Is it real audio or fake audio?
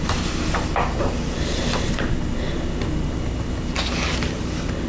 real